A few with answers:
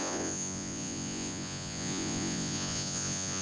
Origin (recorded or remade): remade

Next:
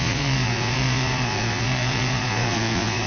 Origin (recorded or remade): remade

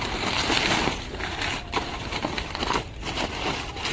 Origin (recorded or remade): recorded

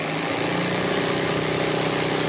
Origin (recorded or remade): recorded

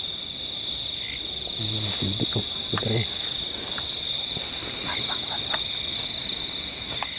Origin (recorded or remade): recorded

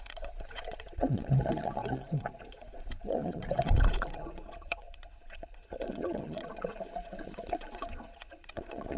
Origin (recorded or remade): remade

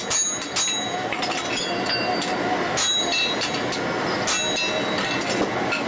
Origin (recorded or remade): recorded